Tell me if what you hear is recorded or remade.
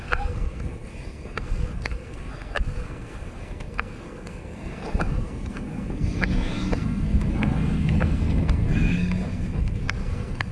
remade